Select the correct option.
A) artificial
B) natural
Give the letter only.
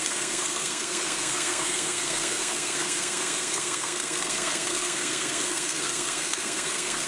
A